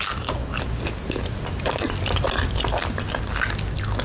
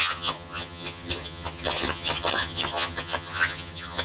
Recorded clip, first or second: first